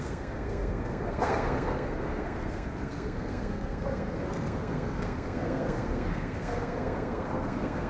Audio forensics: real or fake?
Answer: fake